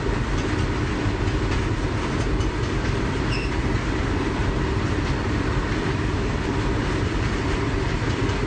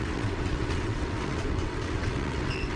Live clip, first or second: first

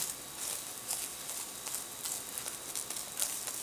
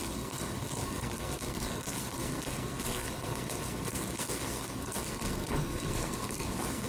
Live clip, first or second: first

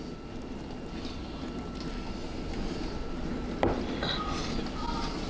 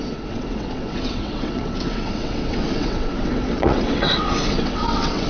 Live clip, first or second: first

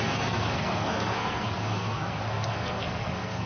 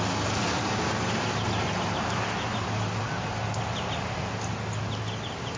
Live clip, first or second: second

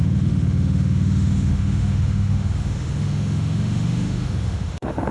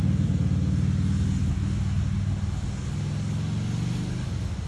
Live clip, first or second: second